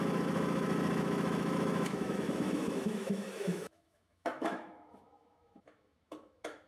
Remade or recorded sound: remade